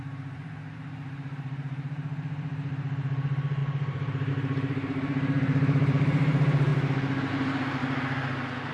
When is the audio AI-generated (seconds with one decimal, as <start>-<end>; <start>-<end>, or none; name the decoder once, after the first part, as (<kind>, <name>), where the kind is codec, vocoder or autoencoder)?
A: 0.0-6.7 (vocoder, BigVGAN v2); 7.3-7.8